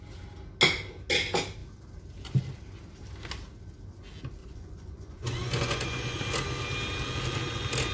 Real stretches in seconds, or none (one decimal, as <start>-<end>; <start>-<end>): 0.0-4.4; 6.2-7.9